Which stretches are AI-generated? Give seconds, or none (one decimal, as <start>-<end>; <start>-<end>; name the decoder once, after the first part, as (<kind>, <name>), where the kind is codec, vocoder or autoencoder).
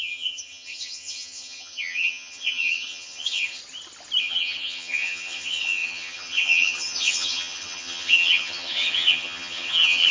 0.0-3.6 (vocoder, HiFi-GAN); 4.2-10.1